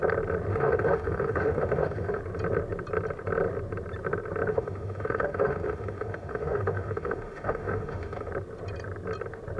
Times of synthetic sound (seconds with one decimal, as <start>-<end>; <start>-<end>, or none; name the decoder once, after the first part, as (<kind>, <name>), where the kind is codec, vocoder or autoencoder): 0.5-2.2 (autoencoder, DAC-VAE); 4.5-8.3